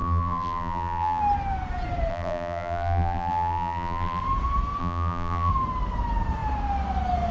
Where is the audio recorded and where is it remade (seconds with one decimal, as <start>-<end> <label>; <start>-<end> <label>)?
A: 0.0-1.2 remade; 1.2-2.1 recorded; 2.1-4.2 remade; 4.2-4.8 recorded; 4.8-5.5 remade; 5.5-7.3 recorded